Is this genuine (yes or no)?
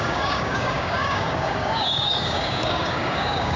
no